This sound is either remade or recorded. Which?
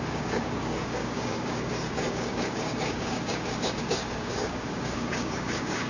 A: remade